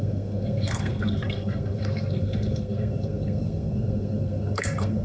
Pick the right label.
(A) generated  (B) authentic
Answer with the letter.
A